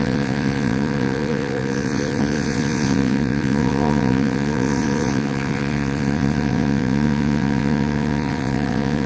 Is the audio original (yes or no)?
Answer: no